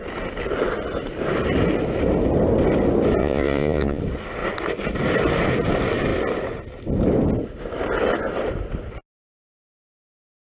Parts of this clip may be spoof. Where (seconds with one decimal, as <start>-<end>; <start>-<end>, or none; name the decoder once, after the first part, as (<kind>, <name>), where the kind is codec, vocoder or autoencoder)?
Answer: 3.2-4.0 (vocoder, Vocos)